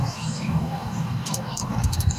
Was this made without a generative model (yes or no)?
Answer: no